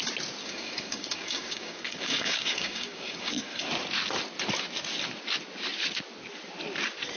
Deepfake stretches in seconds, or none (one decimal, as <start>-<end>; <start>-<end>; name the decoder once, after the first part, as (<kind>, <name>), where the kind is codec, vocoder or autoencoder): 0.4-3.7 (codec, DAC)